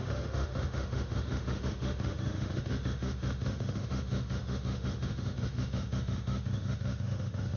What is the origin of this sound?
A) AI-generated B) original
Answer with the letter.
A